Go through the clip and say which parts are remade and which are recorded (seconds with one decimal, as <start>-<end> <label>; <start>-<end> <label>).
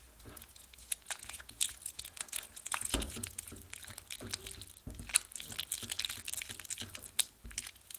0.0-3.6 remade; 3.6-7.6 recorded; 7.6-8.0 remade